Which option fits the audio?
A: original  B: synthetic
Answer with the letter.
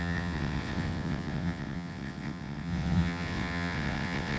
B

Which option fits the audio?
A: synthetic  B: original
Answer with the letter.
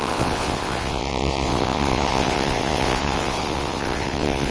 A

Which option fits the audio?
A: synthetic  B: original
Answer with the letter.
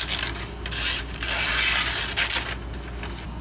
B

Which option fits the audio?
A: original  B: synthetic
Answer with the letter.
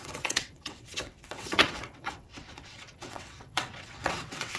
B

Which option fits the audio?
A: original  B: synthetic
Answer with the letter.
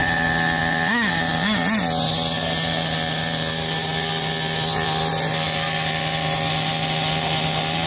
A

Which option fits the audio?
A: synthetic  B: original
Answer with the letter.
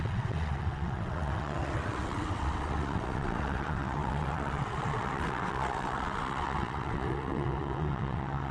A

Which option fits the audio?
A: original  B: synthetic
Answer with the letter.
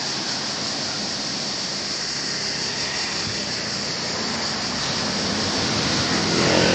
A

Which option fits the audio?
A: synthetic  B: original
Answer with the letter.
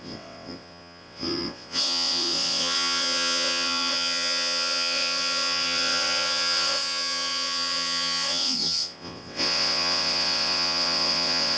A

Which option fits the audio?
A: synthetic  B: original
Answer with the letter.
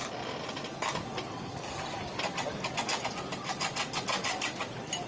B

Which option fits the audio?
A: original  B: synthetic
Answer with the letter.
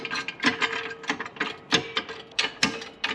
A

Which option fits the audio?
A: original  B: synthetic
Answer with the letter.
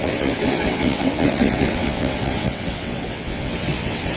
B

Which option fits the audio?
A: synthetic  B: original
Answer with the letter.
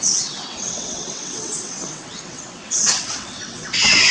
A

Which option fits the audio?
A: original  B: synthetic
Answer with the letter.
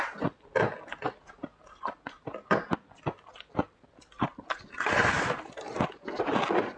A